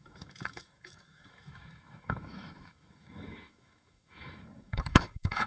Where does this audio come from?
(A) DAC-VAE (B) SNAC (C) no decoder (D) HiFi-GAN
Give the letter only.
A